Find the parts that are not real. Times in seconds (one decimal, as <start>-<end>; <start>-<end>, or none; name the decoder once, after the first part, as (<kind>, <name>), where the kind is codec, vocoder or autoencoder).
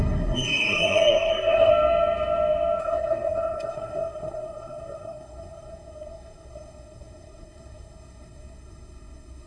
0.0-1.7 (codec, SNAC); 2.8-9.5